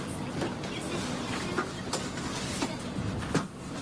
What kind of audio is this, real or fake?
real